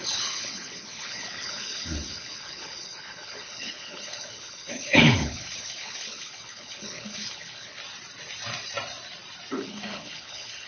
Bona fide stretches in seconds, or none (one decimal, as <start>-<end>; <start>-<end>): 7.8-9.5